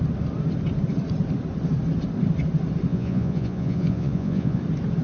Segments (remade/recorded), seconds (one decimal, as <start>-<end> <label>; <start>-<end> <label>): 0.0-2.9 recorded; 2.9-4.6 remade; 4.6-5.0 recorded